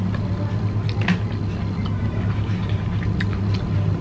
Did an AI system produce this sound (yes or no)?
no